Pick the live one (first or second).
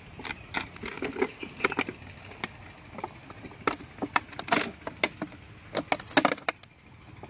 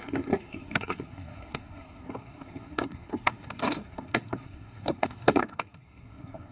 first